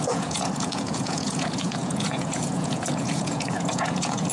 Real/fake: fake